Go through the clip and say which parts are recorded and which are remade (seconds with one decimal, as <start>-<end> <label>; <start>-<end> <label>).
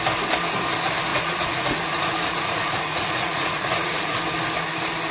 0.0-1.1 recorded; 1.1-4.2 remade; 4.2-5.1 recorded